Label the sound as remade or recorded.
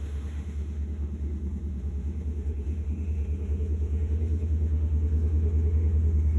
remade